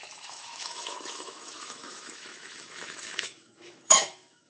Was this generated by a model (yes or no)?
yes